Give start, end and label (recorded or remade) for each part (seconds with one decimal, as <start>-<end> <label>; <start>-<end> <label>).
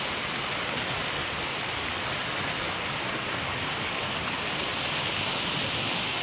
0.0-6.2 recorded